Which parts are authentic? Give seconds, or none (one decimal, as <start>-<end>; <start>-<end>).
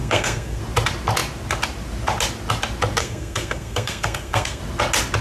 0.6-3.0; 4.6-5.2